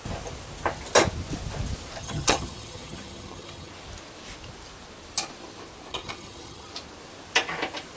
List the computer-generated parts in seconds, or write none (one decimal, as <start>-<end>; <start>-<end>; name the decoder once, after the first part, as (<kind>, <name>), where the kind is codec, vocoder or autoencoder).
2.0-3.7 (vocoder, HiFi-GAN); 5.9-6.7

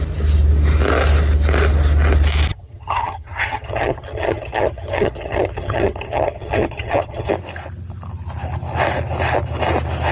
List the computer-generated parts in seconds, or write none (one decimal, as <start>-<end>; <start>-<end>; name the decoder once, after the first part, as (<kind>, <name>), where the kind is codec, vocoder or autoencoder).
2.5-7.3 (vocoder, HiFi-GAN)

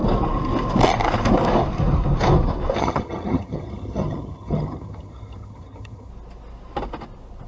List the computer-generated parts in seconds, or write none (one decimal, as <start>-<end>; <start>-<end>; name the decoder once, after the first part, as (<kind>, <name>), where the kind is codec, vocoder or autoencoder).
2.8-6.1 (vocoder, HiFi-GAN)

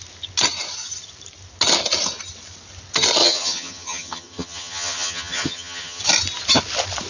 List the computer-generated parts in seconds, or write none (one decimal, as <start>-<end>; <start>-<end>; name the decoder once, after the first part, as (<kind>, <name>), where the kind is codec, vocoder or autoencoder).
3.2-6.0 (vocoder, HiFi-GAN)

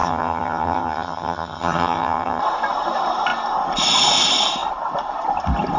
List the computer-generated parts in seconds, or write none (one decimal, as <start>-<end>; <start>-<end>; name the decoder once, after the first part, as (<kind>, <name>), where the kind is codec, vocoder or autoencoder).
0.0-2.4 (vocoder, HiFi-GAN)